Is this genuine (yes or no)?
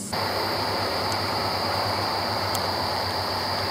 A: no